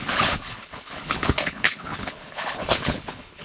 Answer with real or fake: fake